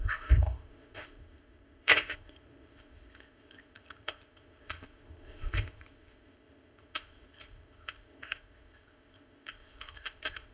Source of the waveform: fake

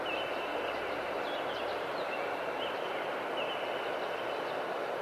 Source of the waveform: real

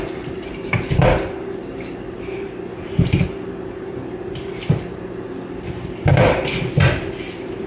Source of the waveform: real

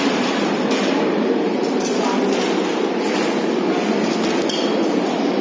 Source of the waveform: fake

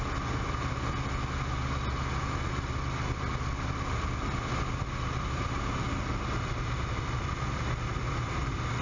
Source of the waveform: real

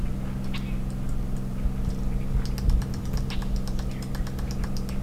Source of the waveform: real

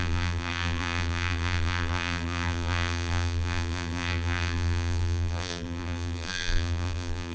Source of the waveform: fake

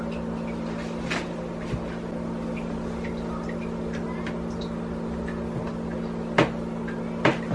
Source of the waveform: real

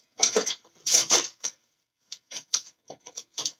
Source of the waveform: fake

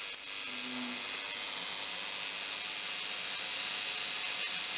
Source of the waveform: real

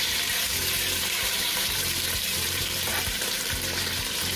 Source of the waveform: fake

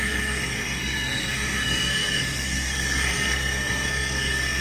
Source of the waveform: fake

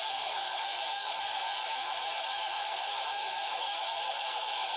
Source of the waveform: fake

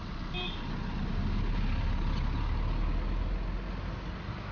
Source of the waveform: real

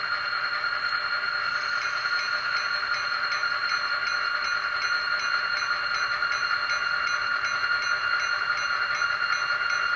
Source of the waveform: real